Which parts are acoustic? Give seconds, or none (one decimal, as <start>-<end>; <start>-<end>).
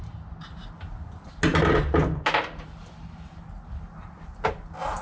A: 0.0-5.0